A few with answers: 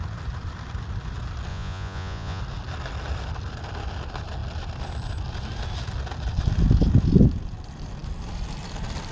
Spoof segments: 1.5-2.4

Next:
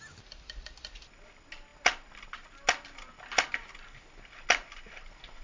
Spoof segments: none